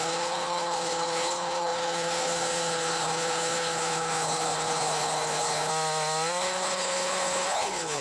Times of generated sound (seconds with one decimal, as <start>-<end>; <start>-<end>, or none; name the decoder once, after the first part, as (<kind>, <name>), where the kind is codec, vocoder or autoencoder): 0.0-5.7 (codec, HILCodec); 6.4-8.0